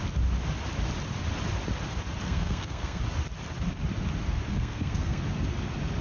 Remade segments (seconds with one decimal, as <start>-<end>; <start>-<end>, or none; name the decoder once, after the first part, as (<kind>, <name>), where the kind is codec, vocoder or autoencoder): 2.2-3.0 (codec, SNAC); 4.5-5.2